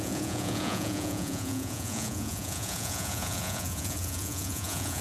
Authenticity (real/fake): fake